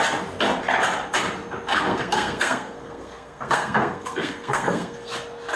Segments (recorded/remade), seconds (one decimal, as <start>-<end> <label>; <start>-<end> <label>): 0.0-1.7 recorded; 1.7-5.1 remade; 5.1-5.6 recorded